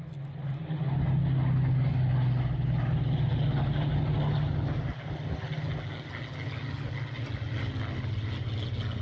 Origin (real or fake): real